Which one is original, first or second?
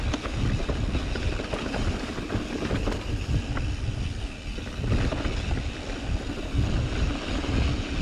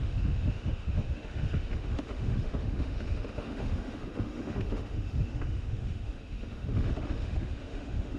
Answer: first